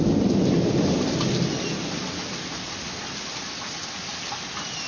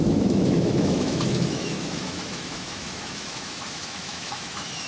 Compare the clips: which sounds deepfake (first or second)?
second